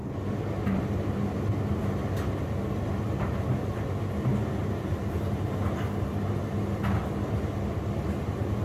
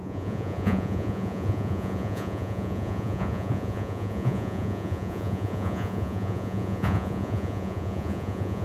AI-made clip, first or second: second